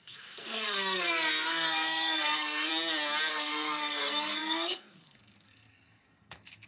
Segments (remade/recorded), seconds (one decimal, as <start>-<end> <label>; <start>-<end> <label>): 0.0-2.7 remade; 2.7-3.3 recorded; 3.3-6.7 remade